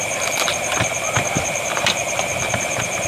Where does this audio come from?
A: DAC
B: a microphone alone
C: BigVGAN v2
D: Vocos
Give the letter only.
C